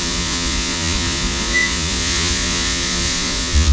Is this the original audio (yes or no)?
no